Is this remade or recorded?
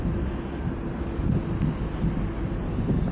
recorded